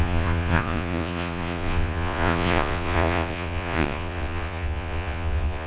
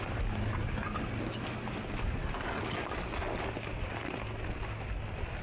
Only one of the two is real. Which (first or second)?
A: second